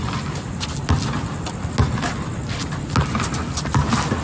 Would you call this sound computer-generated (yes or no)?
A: no